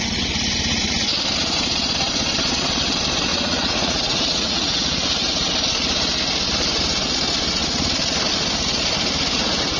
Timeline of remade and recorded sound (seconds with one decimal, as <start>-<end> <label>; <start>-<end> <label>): 0.0-3.3 recorded; 3.3-4.8 remade; 4.8-9.8 recorded